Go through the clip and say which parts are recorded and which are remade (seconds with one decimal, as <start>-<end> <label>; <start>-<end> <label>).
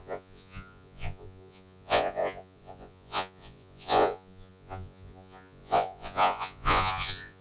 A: 0.0-7.4 remade